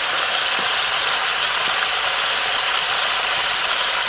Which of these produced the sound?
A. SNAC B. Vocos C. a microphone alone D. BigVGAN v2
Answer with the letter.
C